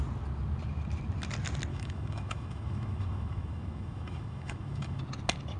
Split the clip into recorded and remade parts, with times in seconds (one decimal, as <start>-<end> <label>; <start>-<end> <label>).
0.0-1.7 recorded; 1.7-5.0 remade; 5.0-5.6 recorded